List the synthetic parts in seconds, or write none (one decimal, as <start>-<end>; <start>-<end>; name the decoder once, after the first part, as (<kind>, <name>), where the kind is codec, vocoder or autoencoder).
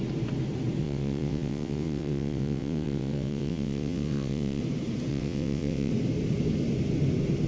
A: 0.8-4.6 (vocoder, WaveNeXt); 5.1-5.9